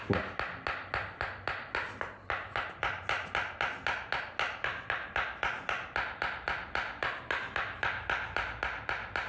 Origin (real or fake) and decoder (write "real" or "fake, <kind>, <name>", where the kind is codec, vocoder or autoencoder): real